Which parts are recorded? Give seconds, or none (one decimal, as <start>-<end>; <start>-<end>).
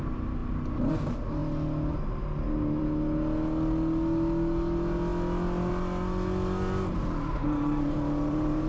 0.0-7.4